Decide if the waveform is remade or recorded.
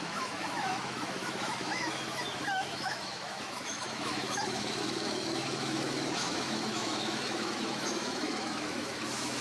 remade